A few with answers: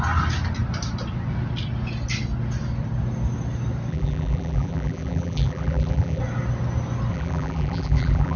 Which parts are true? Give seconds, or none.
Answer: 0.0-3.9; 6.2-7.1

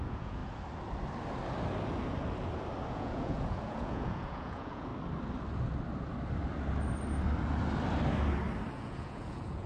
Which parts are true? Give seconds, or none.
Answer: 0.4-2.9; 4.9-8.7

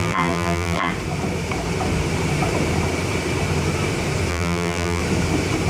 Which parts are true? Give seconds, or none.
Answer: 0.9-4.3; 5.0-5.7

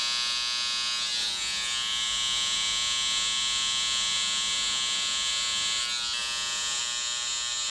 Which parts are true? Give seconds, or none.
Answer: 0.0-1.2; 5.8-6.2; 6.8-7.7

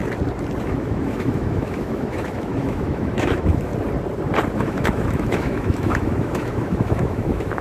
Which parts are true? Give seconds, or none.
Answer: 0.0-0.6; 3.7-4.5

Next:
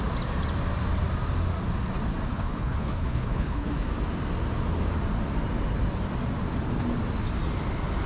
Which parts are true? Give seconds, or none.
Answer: 0.0-2.3; 3.7-8.1